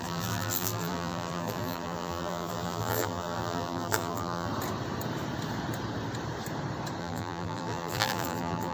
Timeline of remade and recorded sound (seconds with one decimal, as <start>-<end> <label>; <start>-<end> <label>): 0.0-4.5 remade; 4.5-7.0 recorded; 7.0-8.7 remade